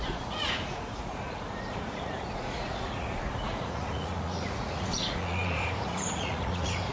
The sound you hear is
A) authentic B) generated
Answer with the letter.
B